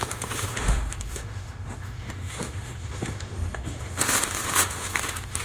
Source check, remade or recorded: remade